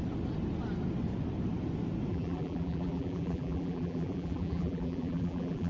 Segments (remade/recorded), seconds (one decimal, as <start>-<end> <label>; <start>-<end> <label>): 0.0-2.1 recorded; 2.1-5.7 remade